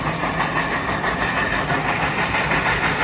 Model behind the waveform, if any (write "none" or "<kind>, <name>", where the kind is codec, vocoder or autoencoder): none